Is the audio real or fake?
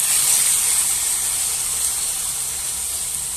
real